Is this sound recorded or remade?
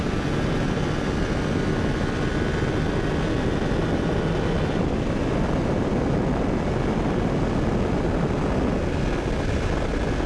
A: recorded